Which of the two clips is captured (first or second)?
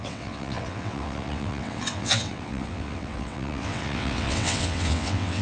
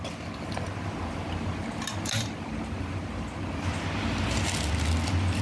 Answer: second